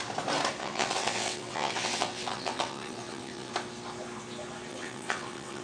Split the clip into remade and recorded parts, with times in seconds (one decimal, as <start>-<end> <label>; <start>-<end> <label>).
0.0-0.6 recorded; 0.6-3.5 remade; 3.5-4.7 recorded; 4.7-5.6 remade